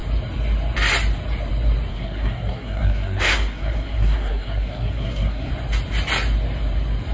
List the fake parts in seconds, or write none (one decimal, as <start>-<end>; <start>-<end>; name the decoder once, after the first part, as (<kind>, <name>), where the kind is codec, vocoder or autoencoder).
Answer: 1.9-5.5 (codec, SNAC)